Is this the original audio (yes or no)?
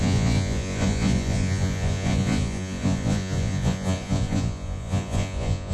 no